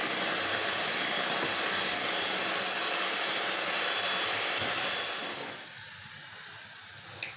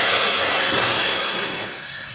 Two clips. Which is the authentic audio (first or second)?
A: first